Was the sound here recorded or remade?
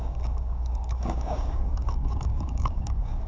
remade